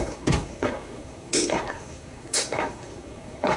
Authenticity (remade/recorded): remade